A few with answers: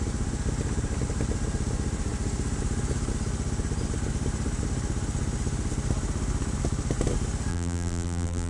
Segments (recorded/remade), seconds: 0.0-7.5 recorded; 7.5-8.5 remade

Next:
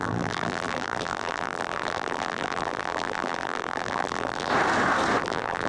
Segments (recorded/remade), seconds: 0.0-4.5 remade; 4.5-5.2 recorded; 5.2-5.7 remade